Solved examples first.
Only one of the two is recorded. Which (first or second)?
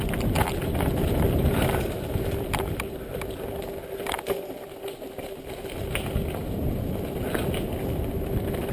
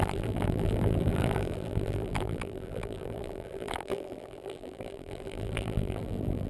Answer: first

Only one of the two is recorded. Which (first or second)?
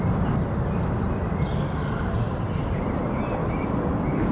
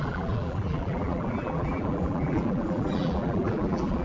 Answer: first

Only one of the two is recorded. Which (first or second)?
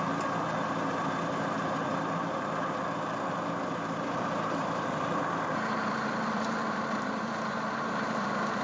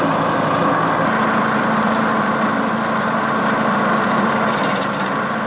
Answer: second